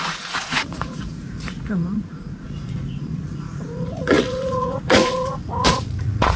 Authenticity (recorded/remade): remade